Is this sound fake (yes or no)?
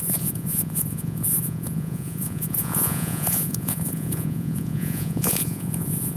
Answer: yes